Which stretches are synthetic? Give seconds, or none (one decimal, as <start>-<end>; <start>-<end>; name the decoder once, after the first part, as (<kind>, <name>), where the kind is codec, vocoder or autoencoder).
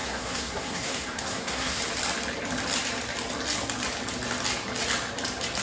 0.0-1.8 (codec, SNAC)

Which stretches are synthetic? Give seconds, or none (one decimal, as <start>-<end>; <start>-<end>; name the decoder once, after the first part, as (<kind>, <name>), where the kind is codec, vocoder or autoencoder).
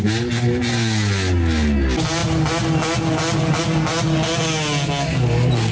none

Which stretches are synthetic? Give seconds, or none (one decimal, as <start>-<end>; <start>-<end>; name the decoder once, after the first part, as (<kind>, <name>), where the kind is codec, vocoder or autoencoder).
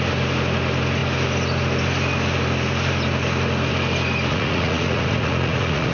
4.3-5.9 (vocoder, Vocos)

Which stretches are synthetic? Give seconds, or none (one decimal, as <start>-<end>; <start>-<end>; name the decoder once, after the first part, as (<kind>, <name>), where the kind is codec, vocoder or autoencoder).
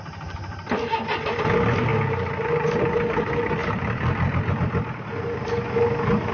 none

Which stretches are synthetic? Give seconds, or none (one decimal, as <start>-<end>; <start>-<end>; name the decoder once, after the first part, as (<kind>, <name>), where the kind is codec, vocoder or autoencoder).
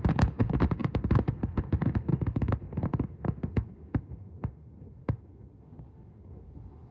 0.0-6.9 (autoencoder, DAC-VAE)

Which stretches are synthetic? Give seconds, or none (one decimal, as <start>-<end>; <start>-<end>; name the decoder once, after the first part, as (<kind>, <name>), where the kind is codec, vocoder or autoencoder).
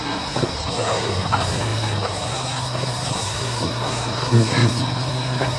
0.0-5.6 (codec, SNAC)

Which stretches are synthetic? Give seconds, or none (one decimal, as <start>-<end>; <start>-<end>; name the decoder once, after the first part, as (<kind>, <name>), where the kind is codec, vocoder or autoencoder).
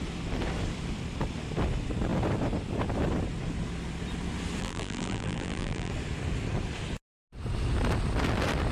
4.6-5.9 (vocoder, BigVGAN v2)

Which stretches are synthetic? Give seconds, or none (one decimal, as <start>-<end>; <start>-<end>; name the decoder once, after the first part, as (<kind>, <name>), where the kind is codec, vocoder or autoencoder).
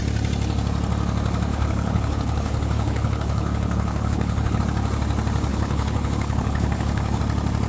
1.5-4.6 (codec, HILCodec); 5.5-7.2